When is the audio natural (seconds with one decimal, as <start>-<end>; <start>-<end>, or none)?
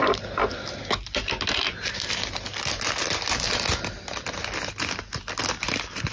0.0-6.1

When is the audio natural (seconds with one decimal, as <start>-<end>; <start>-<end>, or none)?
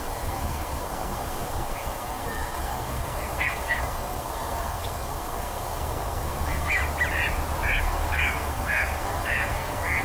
6.8-7.8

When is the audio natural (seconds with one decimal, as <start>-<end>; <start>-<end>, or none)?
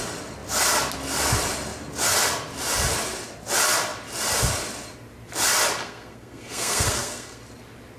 0.0-5.8; 7.4-8.0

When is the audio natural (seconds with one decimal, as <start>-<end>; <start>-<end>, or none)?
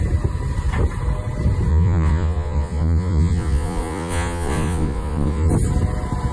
0.0-1.7; 5.5-6.3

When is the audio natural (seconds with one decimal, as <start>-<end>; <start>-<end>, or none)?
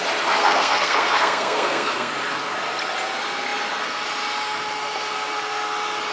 0.0-0.4; 2.1-6.1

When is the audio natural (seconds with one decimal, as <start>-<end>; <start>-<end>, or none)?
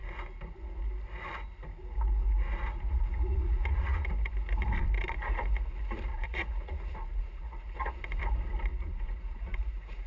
0.0-2.9; 4.1-6.1; 7.8-8.7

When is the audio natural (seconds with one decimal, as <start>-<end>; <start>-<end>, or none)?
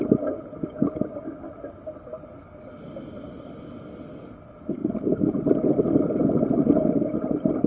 0.0-7.7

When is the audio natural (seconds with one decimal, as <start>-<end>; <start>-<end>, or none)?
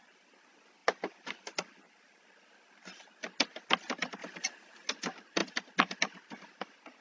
0.0-7.0